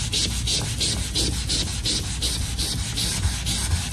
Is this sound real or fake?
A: real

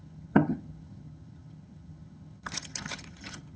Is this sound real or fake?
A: fake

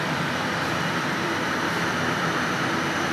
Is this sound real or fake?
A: fake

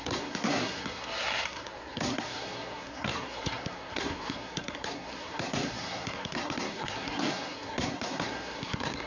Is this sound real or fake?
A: fake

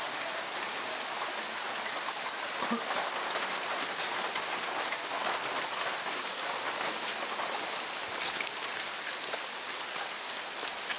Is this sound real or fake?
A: real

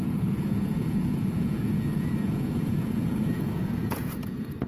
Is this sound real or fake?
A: fake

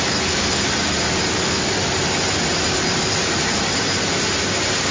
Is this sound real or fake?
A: real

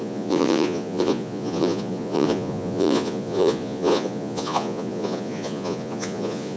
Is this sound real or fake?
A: fake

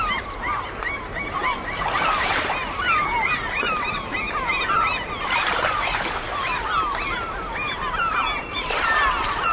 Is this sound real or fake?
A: fake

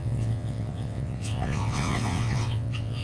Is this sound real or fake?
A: fake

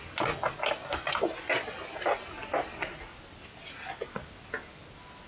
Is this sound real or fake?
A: real